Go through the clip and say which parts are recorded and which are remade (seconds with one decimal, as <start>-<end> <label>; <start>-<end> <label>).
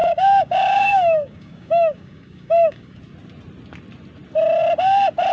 0.0-3.0 remade; 3.0-5.3 recorded